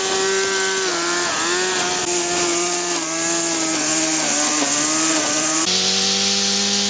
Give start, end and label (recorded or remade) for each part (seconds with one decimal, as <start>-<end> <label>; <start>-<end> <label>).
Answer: 0.0-6.9 recorded